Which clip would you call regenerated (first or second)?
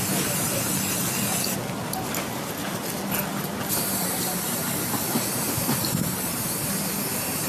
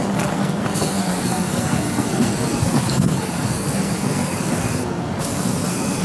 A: second